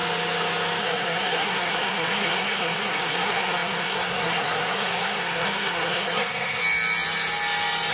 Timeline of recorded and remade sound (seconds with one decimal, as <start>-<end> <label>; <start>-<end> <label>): 0.0-0.8 recorded; 0.8-6.6 remade; 6.6-7.9 recorded